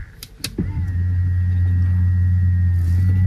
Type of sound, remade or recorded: recorded